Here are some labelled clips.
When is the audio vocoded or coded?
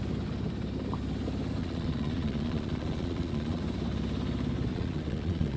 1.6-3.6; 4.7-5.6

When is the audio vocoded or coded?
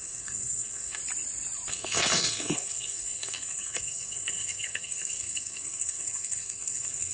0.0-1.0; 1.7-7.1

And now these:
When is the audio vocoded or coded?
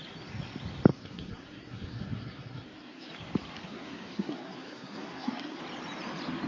0.9-3.1; 3.6-5.6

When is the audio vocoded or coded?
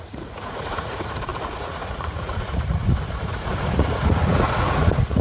0.0-5.2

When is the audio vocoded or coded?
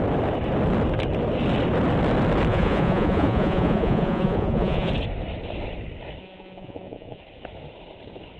2.5-4.9; 6.2-7.2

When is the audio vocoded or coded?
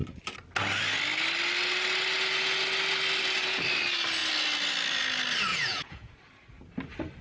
5.5-6.1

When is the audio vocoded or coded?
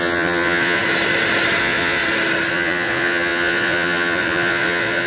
0.0-0.8; 1.6-2.0; 2.5-5.1